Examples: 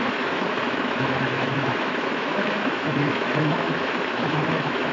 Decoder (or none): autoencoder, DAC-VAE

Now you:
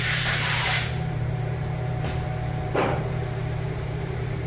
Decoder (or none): vocoder, BigVGAN v2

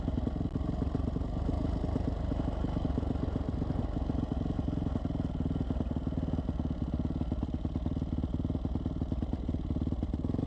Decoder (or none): none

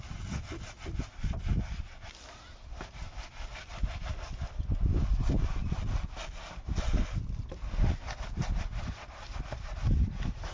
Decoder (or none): none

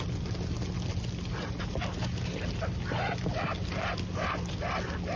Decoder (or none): none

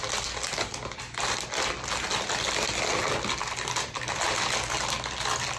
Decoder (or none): none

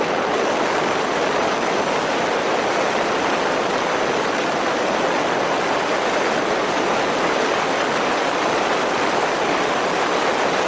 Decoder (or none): vocoder, BigVGAN v2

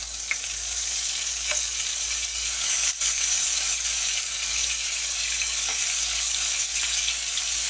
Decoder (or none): codec, DAC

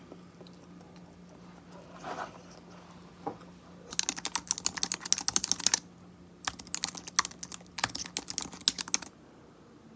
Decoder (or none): none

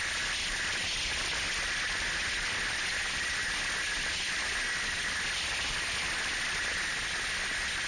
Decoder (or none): none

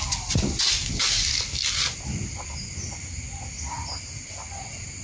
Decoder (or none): none